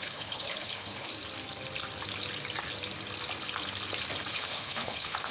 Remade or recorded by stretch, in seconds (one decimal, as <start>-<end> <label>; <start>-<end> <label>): 0.0-1.1 remade; 1.1-4.3 recorded; 4.3-5.3 remade